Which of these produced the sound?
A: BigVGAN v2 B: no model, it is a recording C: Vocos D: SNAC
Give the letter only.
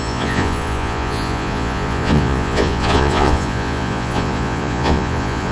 C